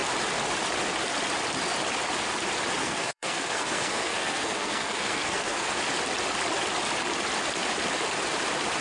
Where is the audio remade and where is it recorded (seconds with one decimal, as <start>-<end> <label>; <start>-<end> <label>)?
0.0-2.8 recorded; 2.8-5.8 remade; 5.8-8.8 recorded